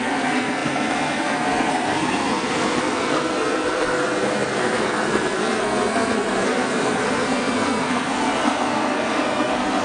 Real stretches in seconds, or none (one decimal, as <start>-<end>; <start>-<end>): none